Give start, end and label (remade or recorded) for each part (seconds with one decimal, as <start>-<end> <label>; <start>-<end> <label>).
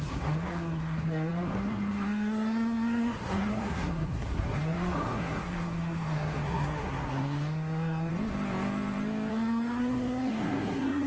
0.0-8.1 remade; 8.1-9.3 recorded; 9.3-11.1 remade